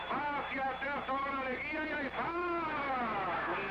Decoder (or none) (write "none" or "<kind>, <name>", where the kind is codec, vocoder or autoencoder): none